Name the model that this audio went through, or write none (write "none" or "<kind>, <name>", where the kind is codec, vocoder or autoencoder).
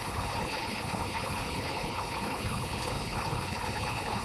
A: codec, HILCodec